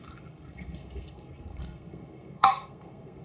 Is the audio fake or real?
fake